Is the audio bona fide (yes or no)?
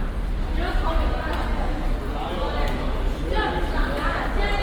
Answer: yes